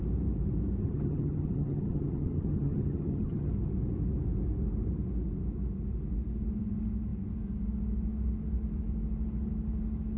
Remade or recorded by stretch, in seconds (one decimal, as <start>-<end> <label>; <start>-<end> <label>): 0.0-0.8 recorded; 0.8-3.5 remade; 3.5-10.2 recorded